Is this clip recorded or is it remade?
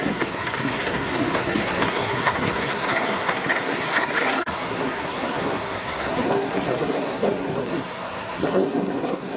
remade